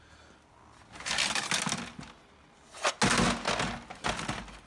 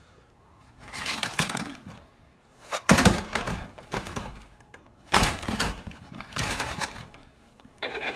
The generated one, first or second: second